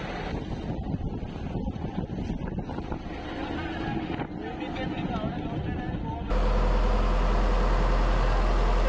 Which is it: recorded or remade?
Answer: recorded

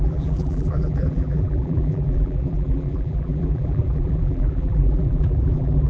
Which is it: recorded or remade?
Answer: remade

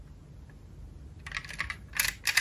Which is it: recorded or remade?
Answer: recorded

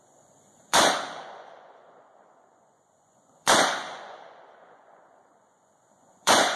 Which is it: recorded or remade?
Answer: remade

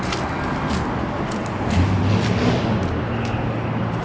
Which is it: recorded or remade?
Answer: recorded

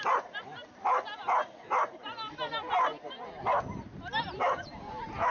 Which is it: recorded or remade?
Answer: recorded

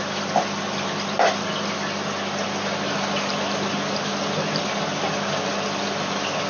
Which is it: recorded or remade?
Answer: recorded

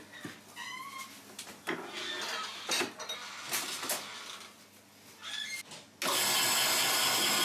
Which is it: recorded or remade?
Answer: recorded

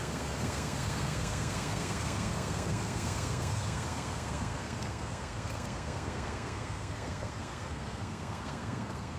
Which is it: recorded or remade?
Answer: remade